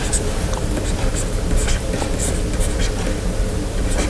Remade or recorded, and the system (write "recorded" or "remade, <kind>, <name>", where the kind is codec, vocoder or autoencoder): remade, vocoder, BigVGAN v2